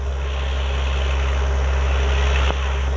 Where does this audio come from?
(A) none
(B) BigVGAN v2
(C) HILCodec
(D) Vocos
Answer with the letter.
A